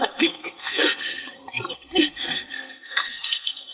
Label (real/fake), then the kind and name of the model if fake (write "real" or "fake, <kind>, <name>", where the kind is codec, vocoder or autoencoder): fake, codec, SNAC